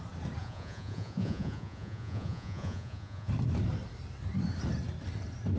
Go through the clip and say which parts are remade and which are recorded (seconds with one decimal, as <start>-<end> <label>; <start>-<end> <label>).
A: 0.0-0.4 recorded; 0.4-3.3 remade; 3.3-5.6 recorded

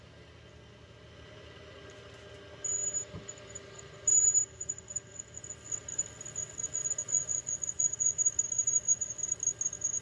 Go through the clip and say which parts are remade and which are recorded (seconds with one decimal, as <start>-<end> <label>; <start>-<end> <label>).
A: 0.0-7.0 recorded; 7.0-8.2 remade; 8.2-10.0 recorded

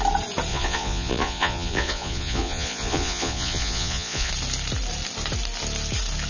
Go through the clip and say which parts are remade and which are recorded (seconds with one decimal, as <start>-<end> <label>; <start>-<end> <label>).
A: 0.0-0.5 recorded; 0.5-4.3 remade; 4.3-6.3 recorded

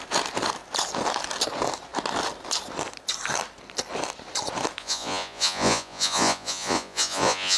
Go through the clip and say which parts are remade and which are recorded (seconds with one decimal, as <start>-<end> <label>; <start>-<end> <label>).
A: 0.0-4.8 recorded; 4.8-7.6 remade